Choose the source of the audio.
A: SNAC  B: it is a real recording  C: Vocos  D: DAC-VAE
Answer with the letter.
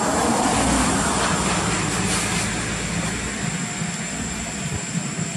B